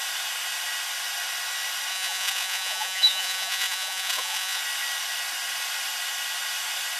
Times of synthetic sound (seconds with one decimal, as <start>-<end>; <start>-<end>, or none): 1.9-4.6